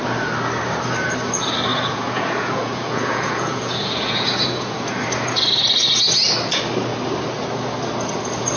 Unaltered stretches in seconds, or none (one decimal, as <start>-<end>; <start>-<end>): 0.0-1.7; 4.8-8.6